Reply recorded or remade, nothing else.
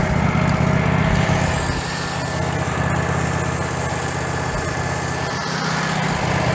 recorded